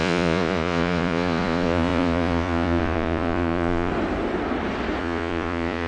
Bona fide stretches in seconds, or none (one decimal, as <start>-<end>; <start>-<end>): 3.9-5.0